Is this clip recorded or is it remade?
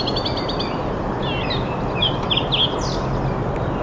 recorded